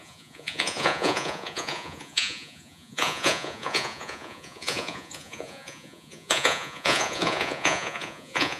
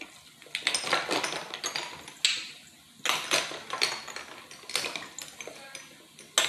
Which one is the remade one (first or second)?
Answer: first